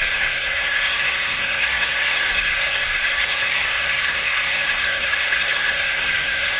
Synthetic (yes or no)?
yes